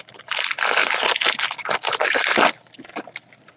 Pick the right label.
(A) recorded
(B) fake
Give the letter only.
A